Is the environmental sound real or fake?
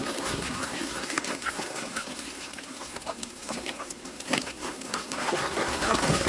fake